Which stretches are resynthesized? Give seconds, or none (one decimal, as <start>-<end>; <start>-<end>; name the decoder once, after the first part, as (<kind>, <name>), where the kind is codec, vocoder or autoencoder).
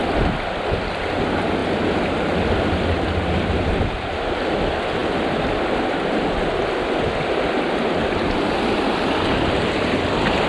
none